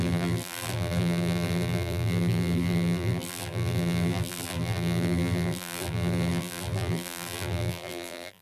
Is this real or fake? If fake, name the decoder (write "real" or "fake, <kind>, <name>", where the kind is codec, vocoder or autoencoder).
fake, vocoder, BigVGAN v2